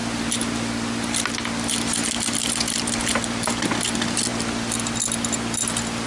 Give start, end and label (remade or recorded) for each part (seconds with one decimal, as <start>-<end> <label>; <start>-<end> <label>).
0.0-6.1 recorded